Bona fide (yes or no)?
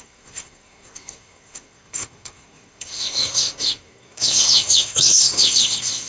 no